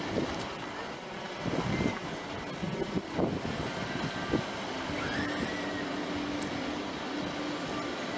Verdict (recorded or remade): recorded